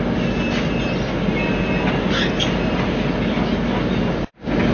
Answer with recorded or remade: recorded